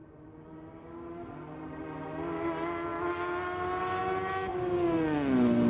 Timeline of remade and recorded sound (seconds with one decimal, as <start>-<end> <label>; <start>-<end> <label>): 0.0-5.7 recorded